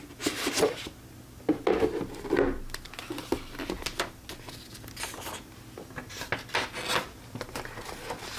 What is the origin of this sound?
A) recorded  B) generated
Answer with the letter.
A